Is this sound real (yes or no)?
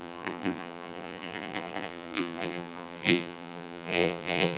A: no